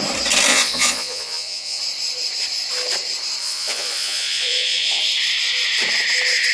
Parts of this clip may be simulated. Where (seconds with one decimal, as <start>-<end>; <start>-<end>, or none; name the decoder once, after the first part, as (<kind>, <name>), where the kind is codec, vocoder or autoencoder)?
0.5-1.8 (vocoder, Vocos); 3.4-5.0